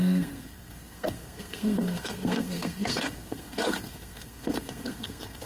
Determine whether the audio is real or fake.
fake